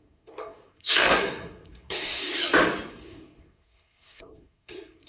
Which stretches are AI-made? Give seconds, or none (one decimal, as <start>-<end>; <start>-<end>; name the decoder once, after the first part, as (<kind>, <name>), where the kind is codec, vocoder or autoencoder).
0.0-2.4 (codec, SNAC); 2.9-5.1